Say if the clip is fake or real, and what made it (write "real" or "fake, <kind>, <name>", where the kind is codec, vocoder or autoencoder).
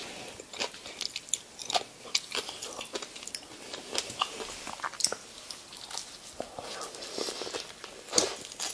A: real